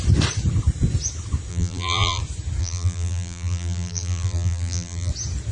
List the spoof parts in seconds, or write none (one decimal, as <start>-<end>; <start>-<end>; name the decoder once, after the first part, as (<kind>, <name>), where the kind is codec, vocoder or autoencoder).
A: 1.5-2.2 (vocoder, BigVGAN v2); 2.6-5.1